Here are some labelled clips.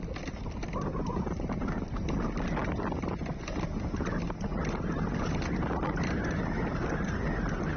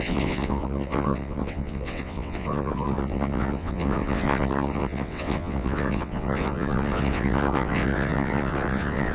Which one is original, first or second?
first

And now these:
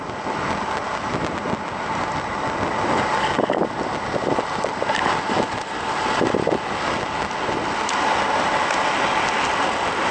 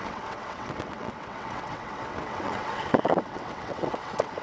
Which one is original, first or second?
first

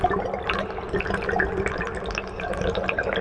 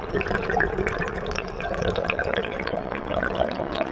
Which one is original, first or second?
first